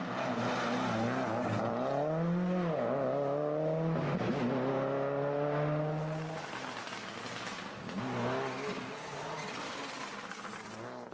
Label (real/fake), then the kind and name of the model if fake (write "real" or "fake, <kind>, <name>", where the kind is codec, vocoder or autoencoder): real